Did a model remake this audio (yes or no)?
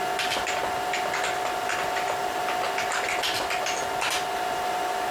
no